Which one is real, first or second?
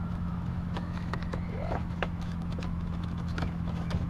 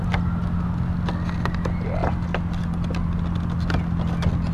second